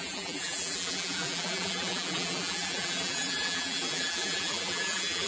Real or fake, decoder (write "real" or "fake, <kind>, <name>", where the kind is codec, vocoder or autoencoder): fake, vocoder, BigVGAN v2